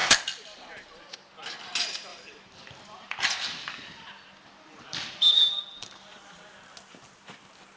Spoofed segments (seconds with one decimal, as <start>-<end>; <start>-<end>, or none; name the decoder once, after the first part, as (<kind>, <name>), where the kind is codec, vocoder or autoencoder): 0.0-1.0 (vocoder, BigVGAN v2); 2.1-6.3